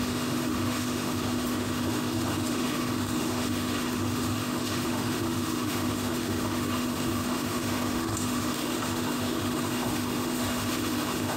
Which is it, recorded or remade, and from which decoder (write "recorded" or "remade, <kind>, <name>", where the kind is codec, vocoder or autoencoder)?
remade, autoencoder, DAC-VAE